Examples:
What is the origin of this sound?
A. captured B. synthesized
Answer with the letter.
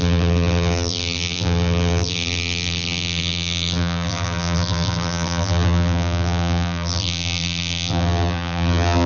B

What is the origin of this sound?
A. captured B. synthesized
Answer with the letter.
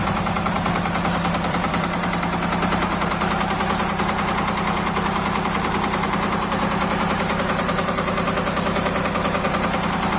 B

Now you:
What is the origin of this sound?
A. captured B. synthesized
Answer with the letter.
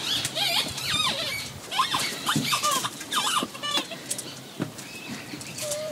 B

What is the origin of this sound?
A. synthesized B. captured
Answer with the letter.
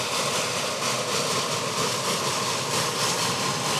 B